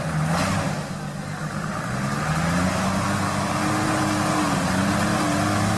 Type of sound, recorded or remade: recorded